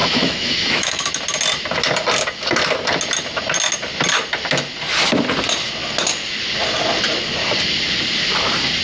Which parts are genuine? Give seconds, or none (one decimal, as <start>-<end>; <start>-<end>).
1.1-8.8